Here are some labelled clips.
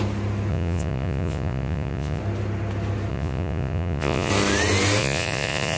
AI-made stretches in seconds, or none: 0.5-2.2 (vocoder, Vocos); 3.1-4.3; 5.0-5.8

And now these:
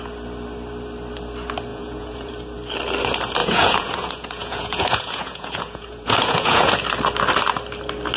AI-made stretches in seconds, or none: 1.7-2.3 (vocoder, Vocos); 3.4-6.7

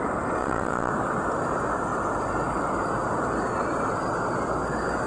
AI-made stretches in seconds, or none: 0.4-0.9 (vocoder, Vocos)